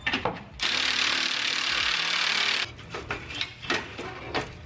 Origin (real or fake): real